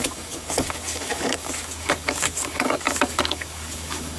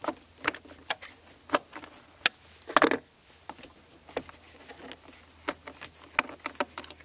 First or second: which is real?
second